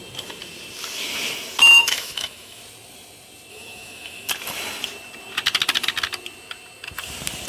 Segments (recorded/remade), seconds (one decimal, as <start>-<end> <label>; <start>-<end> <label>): 0.0-1.7 recorded; 1.7-2.6 remade; 2.6-3.5 recorded; 3.5-4.3 remade; 4.3-7.5 recorded